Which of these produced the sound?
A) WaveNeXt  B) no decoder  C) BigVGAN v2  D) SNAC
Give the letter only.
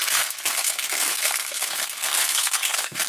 D